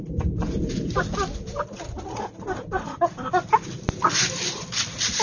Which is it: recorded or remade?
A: recorded